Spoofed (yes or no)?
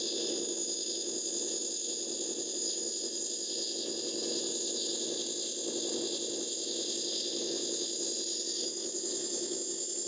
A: no